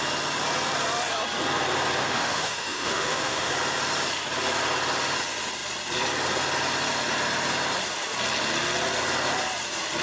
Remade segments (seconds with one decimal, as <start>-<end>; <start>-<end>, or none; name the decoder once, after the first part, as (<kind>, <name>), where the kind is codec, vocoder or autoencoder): 2.0-3.5 (autoencoder, DAC-VAE)